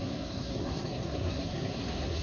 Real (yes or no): no